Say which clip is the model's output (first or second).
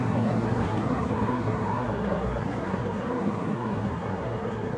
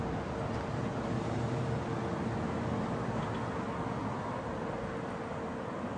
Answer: first